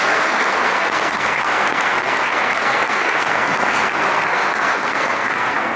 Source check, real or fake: fake